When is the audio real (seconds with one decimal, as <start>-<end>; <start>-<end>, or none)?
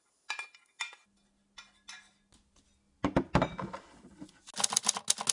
0.0-5.3